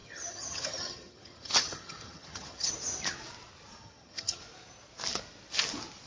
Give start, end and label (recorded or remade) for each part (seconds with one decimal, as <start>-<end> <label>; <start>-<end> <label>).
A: 0.0-2.7 remade; 2.7-3.8 recorded; 3.8-4.4 remade; 4.4-6.1 recorded